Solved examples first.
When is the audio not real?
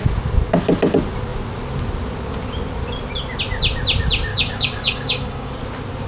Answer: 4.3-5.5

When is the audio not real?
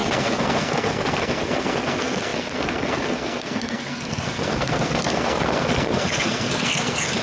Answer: 0.0-7.2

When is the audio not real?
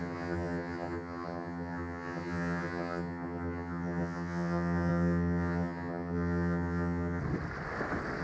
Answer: 0.0-7.2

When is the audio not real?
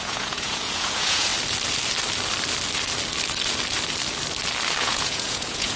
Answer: 0.0-1.3; 4.8-5.8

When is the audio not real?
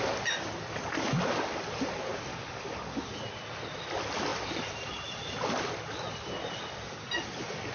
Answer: 2.3-3.0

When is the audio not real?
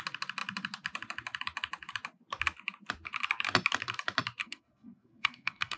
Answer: 4.4-5.8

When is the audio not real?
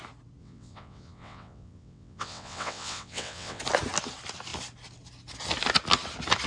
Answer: 0.4-3.6